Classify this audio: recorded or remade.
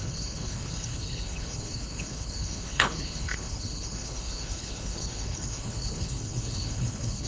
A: remade